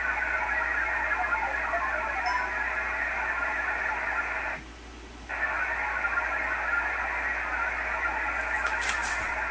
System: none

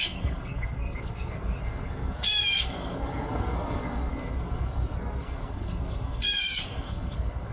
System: codec, SNAC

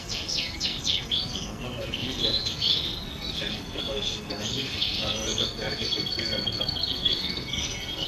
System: codec, SNAC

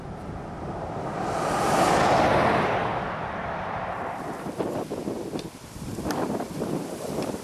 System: vocoder, BigVGAN v2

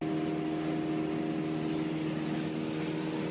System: none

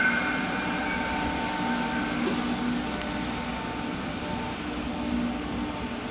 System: none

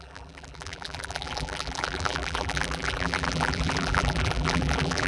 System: vocoder, BigVGAN v2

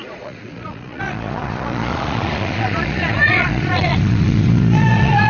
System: vocoder, Vocos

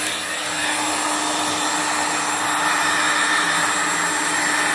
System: none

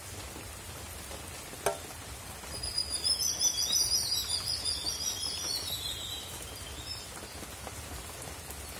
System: none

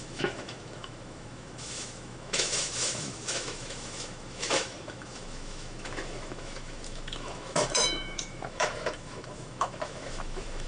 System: autoencoder, DAC-VAE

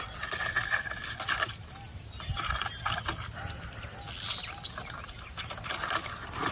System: none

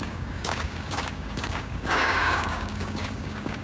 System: codec, DAC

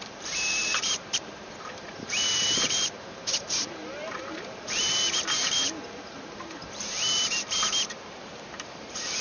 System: vocoder, BigVGAN v2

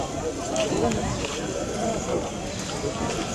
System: none